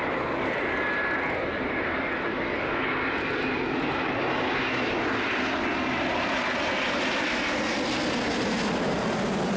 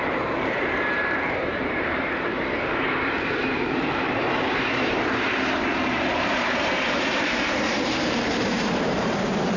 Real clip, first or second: first